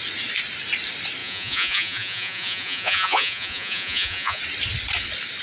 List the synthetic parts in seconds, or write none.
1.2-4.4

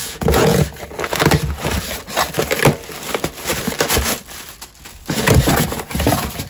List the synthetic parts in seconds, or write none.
0.0-0.6

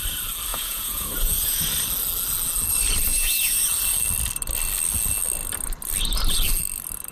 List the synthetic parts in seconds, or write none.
0.5-1.6; 3.1-3.6

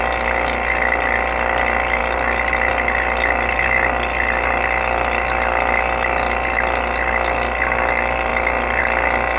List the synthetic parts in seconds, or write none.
2.0-2.7; 8.3-8.8

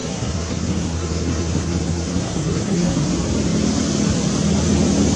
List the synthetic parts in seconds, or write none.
0.0-3.1

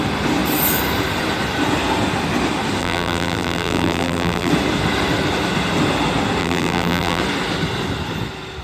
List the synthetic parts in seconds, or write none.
2.8-4.5; 6.4-7.2

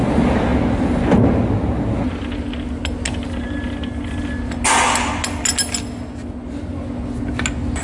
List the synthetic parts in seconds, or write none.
none